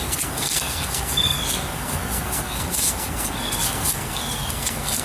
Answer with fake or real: fake